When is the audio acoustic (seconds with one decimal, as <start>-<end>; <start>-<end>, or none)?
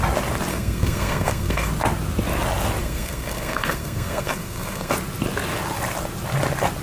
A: 0.0-0.5; 1.7-2.8; 4.9-6.8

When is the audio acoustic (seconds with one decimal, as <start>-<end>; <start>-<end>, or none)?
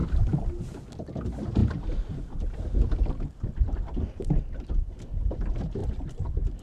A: 0.0-6.6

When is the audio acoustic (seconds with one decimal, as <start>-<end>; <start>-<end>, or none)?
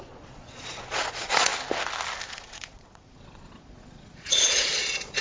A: 1.5-2.3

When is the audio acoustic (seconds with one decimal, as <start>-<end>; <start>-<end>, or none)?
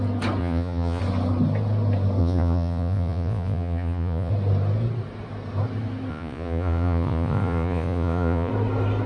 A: 0.0-0.4; 1.0-2.2; 4.3-6.1; 8.5-9.1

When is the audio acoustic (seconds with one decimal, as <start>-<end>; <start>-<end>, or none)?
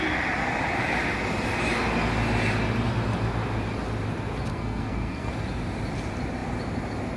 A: 0.0-4.5; 5.3-7.2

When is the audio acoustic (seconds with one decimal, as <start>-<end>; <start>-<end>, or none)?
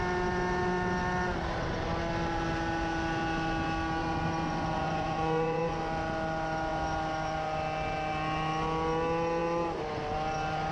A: 0.0-4.0; 5.8-10.7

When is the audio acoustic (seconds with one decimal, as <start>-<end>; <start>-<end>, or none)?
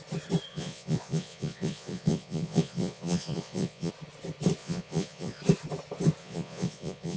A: 0.0-0.5; 3.9-4.6; 5.4-6.2